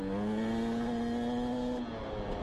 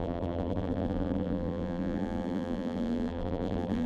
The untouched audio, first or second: first